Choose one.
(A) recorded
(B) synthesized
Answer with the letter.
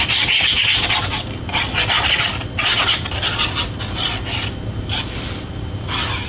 A